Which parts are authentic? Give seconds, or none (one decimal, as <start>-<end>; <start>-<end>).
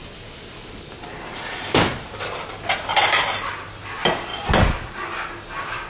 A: 0.0-5.9